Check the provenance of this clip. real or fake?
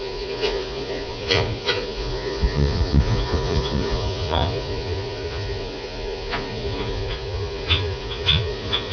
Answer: fake